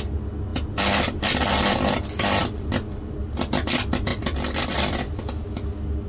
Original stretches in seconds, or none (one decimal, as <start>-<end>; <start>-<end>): 0.0-0.5; 1.2-2.4; 3.2-4.1; 4.9-6.1